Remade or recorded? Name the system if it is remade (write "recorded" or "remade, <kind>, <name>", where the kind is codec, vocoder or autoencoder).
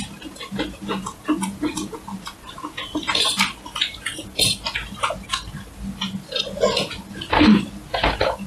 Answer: recorded